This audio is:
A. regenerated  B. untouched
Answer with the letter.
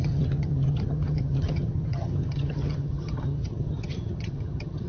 A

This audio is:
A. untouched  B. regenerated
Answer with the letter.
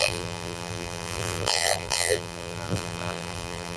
B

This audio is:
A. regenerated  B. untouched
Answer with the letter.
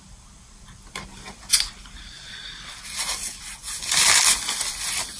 B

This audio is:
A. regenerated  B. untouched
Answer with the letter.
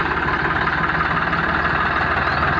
B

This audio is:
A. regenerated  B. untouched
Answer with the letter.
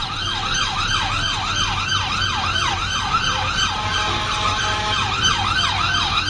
B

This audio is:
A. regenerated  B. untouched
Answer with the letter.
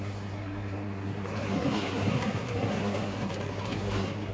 A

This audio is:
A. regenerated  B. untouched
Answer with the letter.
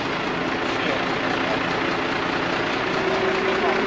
B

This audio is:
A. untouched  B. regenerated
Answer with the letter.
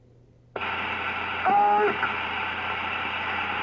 A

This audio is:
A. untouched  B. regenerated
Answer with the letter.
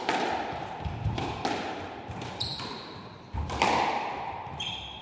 B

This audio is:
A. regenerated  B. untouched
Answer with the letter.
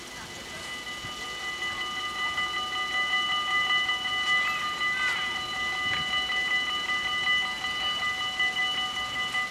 B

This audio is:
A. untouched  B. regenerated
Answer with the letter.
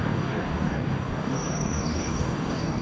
B